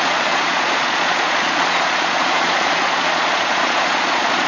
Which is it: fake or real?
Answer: fake